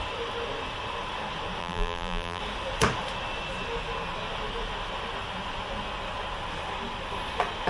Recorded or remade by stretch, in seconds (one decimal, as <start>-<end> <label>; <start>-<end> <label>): 0.0-1.6 recorded; 1.6-2.4 remade; 2.4-7.7 recorded